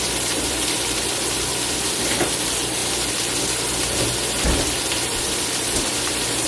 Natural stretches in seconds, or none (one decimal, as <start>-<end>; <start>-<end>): 2.8-3.4